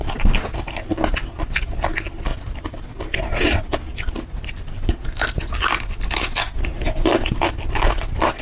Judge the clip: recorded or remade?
recorded